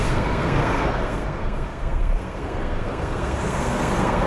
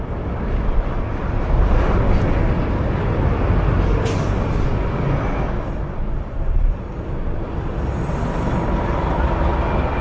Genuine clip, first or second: second